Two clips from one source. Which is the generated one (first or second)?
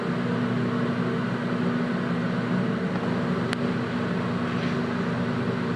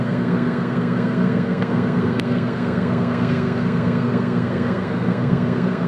second